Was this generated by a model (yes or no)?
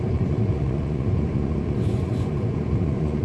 yes